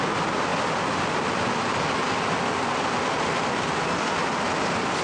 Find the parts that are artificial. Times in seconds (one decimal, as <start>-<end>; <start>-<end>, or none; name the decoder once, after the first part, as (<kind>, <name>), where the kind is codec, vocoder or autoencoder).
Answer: none